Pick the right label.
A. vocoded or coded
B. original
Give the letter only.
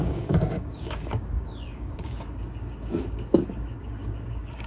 A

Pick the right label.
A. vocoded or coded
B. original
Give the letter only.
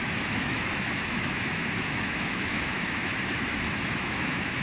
A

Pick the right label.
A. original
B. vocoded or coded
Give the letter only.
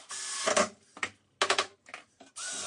A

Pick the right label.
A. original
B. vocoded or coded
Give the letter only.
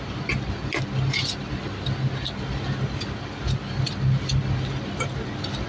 A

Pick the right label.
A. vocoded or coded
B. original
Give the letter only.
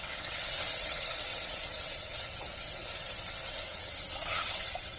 A